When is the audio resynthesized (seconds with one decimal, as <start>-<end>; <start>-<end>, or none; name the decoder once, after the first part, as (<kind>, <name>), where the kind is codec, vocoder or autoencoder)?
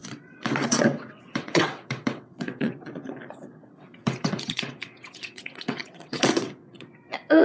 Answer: 0.0-7.4 (vocoder, WaveNeXt)